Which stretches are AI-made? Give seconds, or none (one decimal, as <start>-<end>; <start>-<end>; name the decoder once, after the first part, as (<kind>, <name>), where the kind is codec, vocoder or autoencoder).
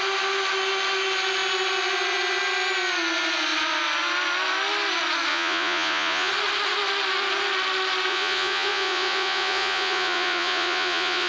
5.3-6.3 (vocoder, Vocos); 8.1-11.3